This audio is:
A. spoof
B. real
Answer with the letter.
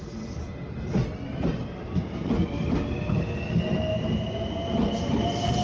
B